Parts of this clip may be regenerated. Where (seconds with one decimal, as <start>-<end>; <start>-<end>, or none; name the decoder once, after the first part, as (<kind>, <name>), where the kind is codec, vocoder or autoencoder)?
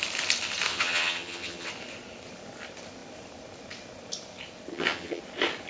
0.7-1.7 (vocoder, HiFi-GAN); 4.7-5.2